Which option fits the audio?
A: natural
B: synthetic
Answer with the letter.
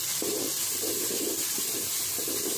A